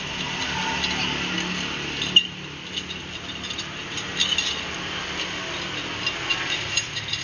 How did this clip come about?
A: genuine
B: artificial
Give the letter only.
A